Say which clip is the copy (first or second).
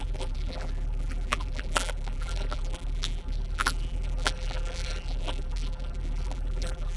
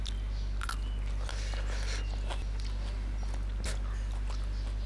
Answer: first